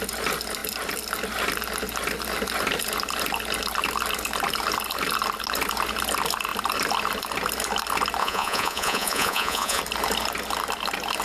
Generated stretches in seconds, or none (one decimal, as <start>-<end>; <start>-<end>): 8.2-9.8

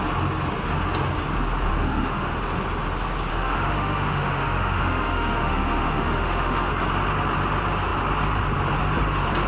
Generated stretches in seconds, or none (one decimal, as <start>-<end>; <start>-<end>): 1.7-2.4; 3.3-6.7